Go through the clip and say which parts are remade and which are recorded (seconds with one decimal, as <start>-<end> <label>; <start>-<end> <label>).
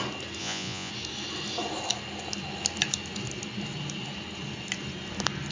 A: 0.0-0.4 recorded; 0.4-0.9 remade; 0.9-5.5 recorded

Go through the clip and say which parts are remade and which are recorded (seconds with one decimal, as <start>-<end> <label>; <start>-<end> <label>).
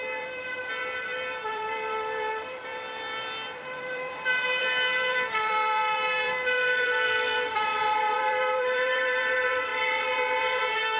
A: 0.0-11.0 remade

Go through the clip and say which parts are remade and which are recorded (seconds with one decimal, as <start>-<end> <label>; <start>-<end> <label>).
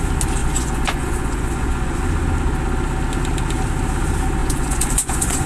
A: 0.0-0.4 recorded; 0.4-2.0 remade; 2.0-4.4 recorded; 4.4-5.5 remade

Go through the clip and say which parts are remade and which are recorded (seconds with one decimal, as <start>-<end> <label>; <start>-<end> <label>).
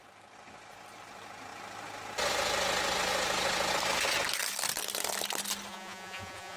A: 0.0-5.7 recorded; 5.7-6.6 remade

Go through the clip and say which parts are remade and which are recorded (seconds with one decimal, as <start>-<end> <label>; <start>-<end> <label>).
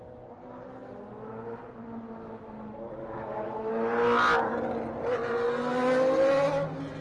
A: 0.0-3.0 recorded; 3.0-3.7 remade; 3.7-7.0 recorded